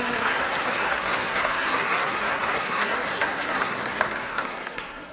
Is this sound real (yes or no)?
no